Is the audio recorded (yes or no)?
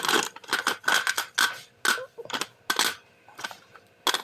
yes